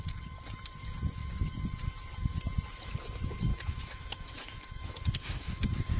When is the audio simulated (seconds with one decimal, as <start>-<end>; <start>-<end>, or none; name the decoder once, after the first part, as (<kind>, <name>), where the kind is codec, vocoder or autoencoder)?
3.5-6.0 (autoencoder, DAC-VAE)